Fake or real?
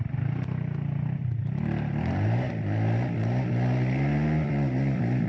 real